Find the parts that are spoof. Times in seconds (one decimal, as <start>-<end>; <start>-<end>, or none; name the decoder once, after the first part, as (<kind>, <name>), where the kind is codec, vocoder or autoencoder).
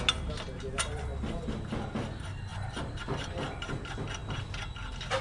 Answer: 2.5-3.0 (vocoder, BigVGAN v2)